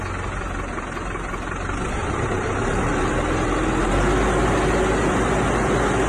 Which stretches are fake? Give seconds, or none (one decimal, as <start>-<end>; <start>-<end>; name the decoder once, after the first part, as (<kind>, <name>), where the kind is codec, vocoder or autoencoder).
2.0-3.9 (vocoder, BigVGAN v2)